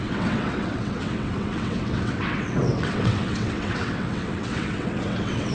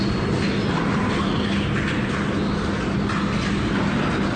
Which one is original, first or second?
second